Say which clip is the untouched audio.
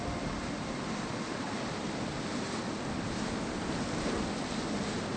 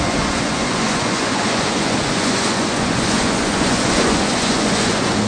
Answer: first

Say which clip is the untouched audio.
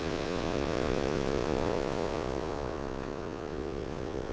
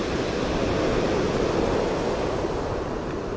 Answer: second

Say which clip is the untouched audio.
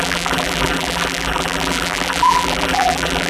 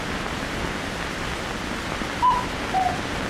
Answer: second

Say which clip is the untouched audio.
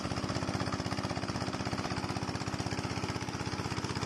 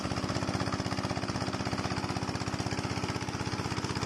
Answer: second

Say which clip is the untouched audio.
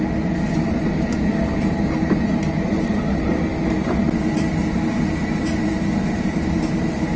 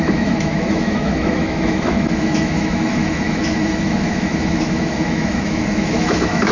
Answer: first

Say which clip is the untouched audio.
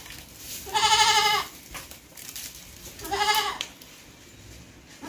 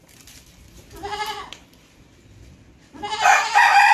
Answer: first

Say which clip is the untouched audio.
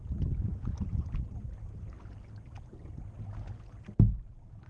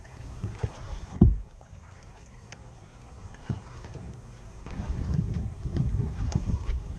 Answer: first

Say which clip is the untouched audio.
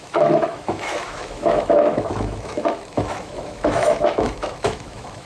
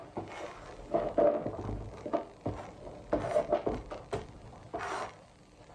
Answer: second